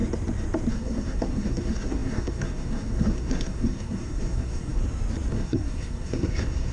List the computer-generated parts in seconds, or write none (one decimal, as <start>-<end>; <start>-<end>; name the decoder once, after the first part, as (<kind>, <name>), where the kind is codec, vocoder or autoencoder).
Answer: 0.7-4.8 (codec, SNAC); 5.3-6.7